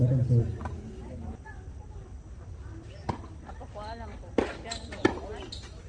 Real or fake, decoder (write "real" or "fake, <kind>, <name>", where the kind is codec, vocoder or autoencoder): real